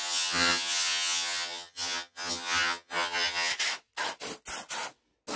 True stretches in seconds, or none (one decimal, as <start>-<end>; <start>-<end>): 3.5-5.4